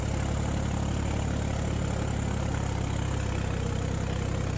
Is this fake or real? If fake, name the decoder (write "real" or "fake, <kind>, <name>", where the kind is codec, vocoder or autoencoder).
real